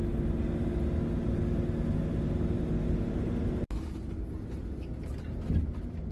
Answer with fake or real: real